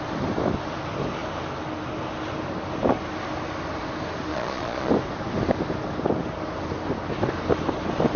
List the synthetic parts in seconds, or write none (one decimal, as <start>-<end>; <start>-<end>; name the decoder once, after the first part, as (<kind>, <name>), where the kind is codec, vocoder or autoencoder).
4.3-4.9 (vocoder, Vocos)